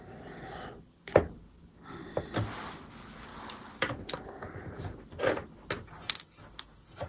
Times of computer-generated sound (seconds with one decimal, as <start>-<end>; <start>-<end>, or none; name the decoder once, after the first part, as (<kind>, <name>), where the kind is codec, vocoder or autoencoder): none